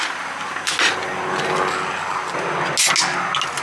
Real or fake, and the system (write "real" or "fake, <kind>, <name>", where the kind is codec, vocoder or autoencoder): real